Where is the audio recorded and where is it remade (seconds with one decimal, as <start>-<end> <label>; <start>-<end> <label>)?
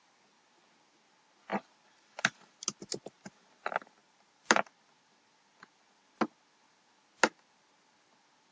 0.0-4.0 recorded; 4.0-4.8 remade; 4.8-8.5 recorded